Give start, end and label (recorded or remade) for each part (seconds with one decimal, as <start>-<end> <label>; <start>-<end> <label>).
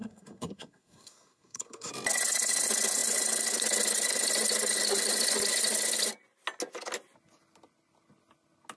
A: 0.0-1.9 remade; 1.9-8.8 recorded